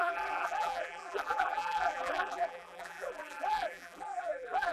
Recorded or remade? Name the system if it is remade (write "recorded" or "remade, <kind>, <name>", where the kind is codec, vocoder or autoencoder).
remade, vocoder, BigVGAN v2